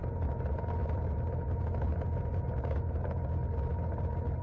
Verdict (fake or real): real